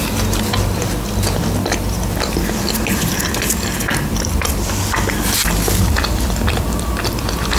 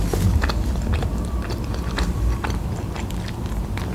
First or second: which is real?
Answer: first